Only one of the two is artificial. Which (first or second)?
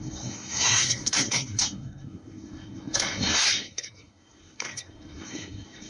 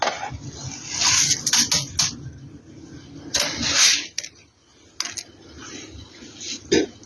first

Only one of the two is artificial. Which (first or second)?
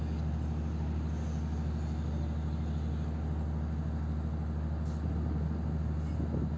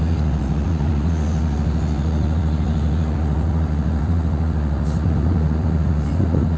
second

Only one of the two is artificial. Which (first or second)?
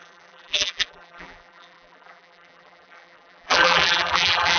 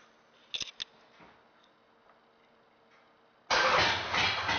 first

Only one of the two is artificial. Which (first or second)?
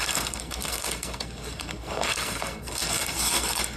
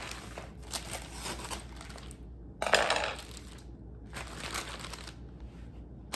first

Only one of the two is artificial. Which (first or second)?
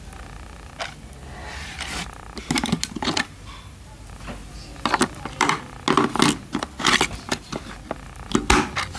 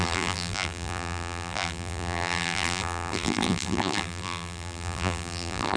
second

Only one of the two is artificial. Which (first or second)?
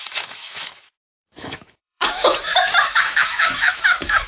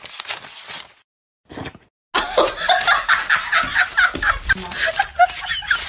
first